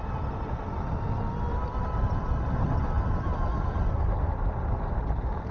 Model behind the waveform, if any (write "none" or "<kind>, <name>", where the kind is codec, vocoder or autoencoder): none